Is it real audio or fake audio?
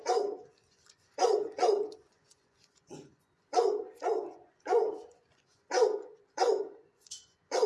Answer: fake